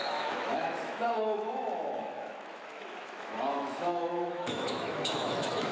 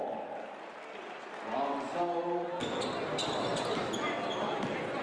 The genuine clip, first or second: second